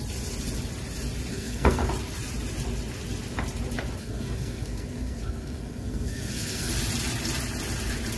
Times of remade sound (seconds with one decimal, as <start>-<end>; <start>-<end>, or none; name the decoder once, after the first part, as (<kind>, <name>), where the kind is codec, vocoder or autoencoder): 1.3-1.9 (codec, SNAC); 4.0-6.7